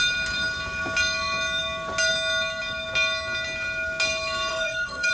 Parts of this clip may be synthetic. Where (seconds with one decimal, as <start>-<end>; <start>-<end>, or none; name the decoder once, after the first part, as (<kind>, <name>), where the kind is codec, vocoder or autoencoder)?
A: 4.5-5.1 (codec, SNAC)